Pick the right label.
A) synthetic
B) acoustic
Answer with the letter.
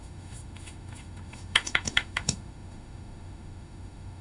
A